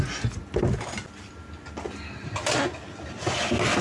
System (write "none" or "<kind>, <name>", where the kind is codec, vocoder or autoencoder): none